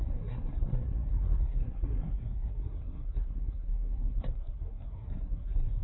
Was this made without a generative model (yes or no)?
no